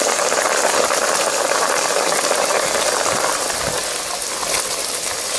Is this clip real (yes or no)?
yes